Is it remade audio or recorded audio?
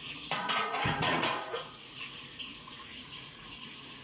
remade